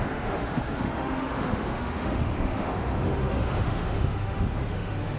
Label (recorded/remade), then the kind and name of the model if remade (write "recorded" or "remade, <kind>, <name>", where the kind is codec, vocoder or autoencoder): remade, autoencoder, DAC-VAE